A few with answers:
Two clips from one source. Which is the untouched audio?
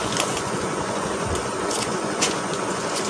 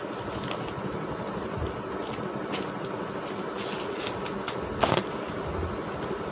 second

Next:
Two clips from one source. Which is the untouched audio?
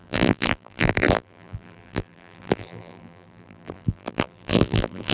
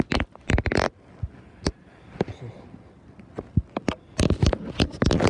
second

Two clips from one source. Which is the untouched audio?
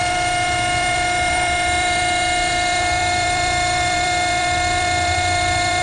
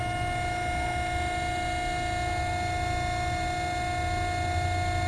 second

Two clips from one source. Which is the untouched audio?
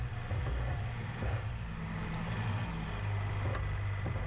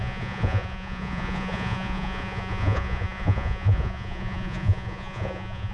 first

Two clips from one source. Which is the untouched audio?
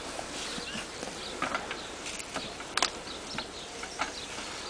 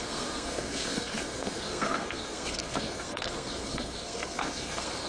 first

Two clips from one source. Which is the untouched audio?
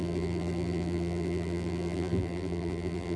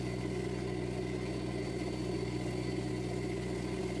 second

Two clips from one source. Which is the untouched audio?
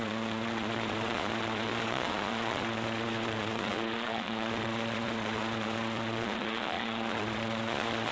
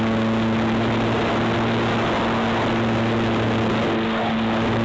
second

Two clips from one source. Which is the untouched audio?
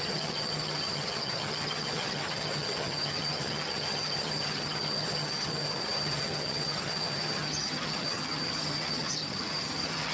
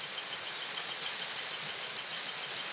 second